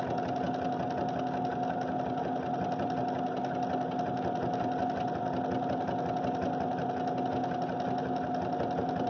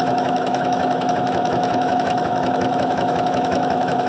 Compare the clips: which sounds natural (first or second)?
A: first